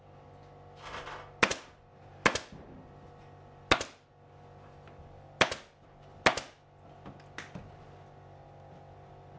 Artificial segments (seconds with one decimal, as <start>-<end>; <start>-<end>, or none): none